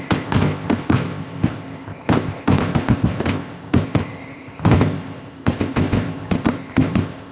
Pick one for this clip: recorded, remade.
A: remade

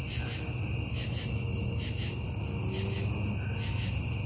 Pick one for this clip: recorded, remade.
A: recorded